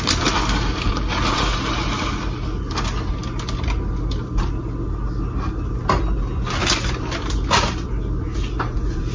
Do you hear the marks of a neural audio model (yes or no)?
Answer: no